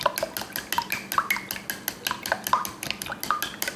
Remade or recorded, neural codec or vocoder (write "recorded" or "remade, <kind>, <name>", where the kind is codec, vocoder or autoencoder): recorded